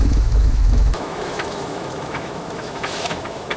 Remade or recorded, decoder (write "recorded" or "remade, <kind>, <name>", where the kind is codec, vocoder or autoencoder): remade, autoencoder, DAC-VAE